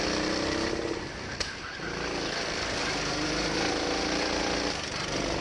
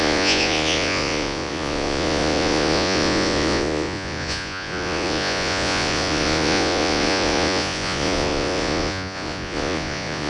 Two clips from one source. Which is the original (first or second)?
first